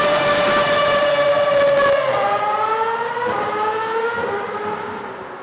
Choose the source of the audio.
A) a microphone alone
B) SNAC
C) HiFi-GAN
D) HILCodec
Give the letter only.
A